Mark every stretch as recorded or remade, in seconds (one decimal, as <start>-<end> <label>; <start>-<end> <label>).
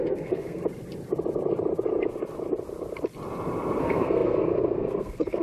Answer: 0.0-0.6 remade; 0.6-3.8 recorded; 3.8-5.4 remade